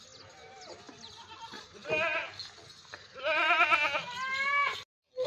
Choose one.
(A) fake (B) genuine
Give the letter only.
B